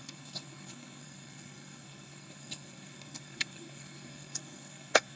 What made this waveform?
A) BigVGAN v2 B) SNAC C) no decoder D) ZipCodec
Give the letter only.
B